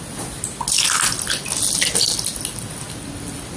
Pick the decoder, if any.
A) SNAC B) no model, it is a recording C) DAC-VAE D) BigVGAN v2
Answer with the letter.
B